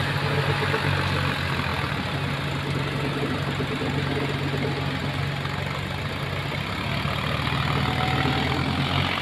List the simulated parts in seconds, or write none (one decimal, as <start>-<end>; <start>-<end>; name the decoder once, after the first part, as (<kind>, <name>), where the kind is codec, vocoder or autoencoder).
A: none